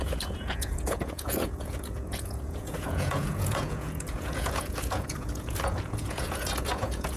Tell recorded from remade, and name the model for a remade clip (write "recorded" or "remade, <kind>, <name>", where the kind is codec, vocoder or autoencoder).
remade, vocoder, Vocos